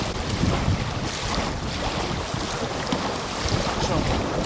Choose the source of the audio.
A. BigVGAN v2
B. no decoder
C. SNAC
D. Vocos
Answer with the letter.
B